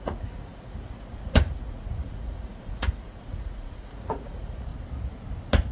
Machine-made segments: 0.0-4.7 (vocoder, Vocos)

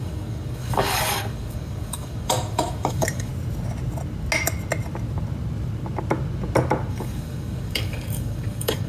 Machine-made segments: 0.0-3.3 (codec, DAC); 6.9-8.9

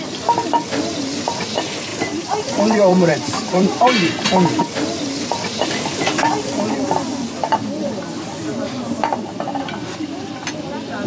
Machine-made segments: 0.0-7.1 (vocoder, BigVGAN v2); 7.9-11.1

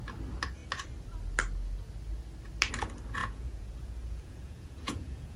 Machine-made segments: 3.2-5.4 (vocoder, Vocos)

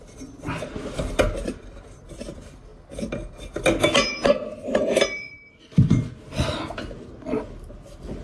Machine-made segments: none